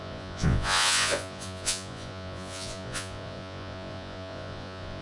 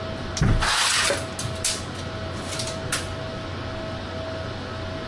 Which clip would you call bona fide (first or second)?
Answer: second